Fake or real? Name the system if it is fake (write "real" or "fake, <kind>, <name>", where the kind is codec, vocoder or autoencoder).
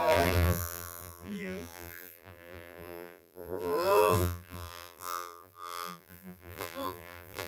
fake, vocoder, BigVGAN v2